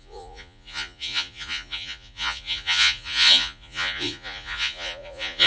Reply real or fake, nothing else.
fake